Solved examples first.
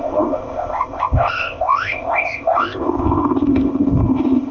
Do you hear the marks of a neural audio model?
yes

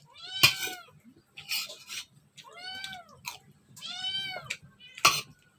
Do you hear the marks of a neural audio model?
no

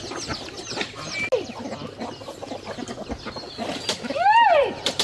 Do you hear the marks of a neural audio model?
no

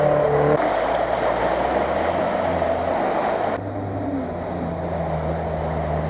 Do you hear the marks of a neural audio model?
no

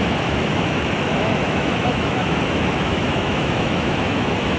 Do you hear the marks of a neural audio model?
yes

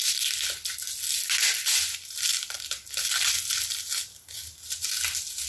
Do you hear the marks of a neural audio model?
no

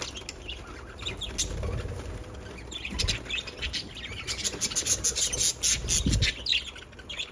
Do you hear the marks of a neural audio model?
no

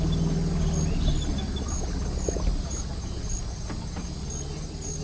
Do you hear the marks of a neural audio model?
no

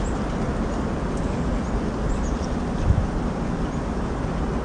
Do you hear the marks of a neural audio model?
no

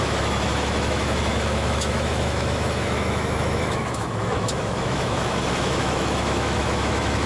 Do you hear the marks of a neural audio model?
yes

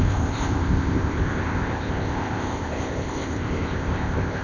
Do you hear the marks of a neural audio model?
yes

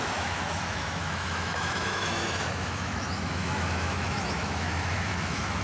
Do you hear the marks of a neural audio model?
yes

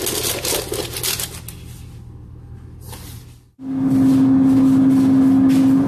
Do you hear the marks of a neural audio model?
no